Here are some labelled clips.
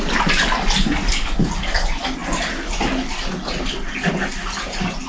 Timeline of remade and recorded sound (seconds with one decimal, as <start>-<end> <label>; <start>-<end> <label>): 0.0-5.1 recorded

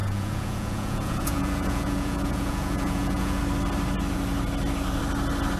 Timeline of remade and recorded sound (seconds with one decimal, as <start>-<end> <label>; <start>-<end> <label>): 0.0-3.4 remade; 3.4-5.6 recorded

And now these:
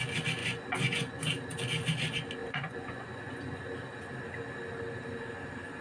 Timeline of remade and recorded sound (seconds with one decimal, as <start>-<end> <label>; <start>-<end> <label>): 0.0-0.4 recorded; 0.4-1.2 remade; 1.2-2.4 recorded; 2.4-3.6 remade; 3.6-5.8 recorded

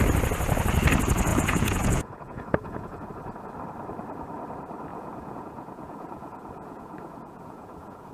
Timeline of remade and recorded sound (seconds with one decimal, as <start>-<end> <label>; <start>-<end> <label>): 0.0-1.3 recorded; 1.3-3.1 remade; 3.1-4.9 recorded; 4.9-8.1 remade

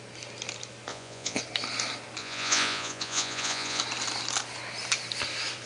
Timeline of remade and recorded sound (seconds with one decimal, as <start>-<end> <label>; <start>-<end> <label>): 0.0-0.9 recorded; 0.9-1.4 remade; 1.4-2.2 recorded; 2.2-3.8 remade; 3.8-5.7 recorded

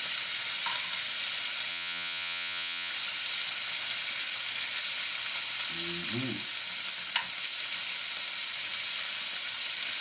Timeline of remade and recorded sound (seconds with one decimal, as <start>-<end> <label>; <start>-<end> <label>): 0.0-1.7 recorded; 1.7-2.9 remade; 2.9-10.0 recorded

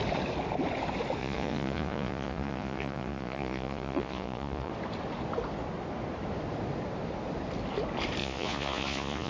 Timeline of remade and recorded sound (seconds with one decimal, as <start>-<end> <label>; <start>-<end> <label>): 0.0-1.2 recorded; 1.2-4.7 remade; 4.7-8.2 recorded; 8.2-9.3 remade

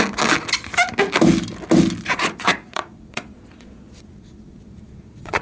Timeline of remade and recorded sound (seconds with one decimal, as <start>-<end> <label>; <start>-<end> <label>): 0.0-2.1 recorded; 2.1-5.4 remade